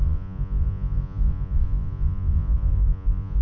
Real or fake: fake